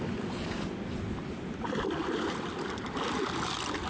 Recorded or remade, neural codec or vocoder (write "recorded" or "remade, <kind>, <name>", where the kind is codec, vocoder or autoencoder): recorded